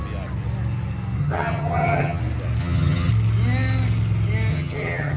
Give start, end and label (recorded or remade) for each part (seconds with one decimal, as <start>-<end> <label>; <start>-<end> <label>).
0.0-1.2 recorded; 1.2-2.2 remade; 2.2-2.6 recorded; 2.6-3.1 remade; 3.1-4.5 recorded; 4.5-5.2 remade